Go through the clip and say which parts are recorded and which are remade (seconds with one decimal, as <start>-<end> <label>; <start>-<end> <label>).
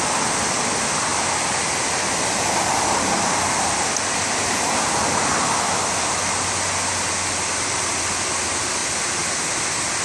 0.0-10.0 recorded